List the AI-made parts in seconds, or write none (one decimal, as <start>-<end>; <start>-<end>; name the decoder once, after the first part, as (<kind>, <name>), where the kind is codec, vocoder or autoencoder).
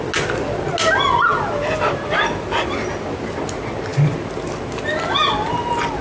none